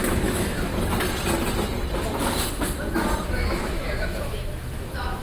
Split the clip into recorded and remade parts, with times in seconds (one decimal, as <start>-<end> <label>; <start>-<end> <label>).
0.0-0.7 remade; 0.7-3.2 recorded; 3.2-5.2 remade